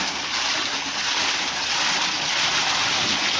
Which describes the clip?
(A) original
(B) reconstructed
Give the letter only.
A